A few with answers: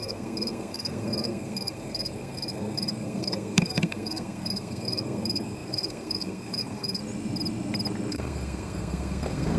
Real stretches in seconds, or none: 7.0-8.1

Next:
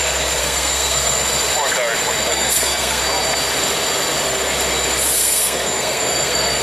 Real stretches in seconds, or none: 0.0-0.4; 1.2-2.3; 3.0-5.2

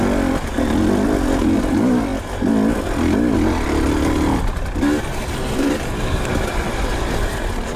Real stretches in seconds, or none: 0.0-7.8